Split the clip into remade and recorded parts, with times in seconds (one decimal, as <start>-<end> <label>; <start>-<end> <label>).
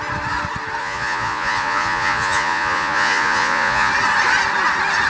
0.0-0.8 recorded; 0.8-3.9 remade; 3.9-5.1 recorded